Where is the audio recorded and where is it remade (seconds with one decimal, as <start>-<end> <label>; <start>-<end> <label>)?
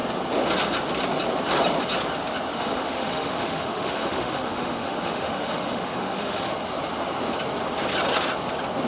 0.0-2.5 recorded; 2.5-6.5 remade; 6.5-8.9 recorded